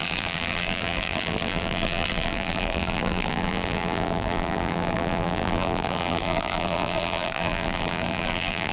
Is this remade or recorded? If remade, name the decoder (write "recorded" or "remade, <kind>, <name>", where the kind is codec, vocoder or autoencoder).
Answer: remade, vocoder, BigVGAN v2